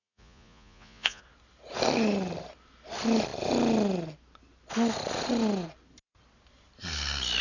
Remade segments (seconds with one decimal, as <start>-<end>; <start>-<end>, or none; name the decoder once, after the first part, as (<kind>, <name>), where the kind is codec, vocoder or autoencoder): 0.0-1.2 (vocoder, Vocos)